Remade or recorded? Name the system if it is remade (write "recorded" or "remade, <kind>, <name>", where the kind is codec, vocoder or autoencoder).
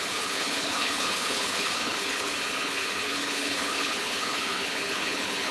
remade, codec, HILCodec